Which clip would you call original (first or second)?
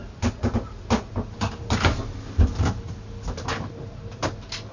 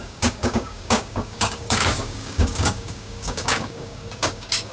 first